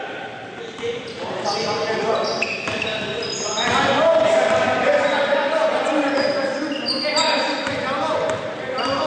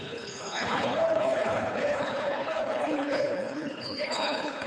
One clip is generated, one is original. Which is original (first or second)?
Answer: first